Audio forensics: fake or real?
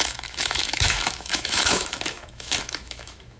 fake